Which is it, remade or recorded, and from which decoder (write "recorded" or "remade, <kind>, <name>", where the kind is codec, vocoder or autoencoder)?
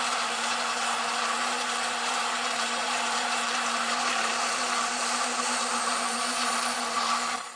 remade, vocoder, BigVGAN v2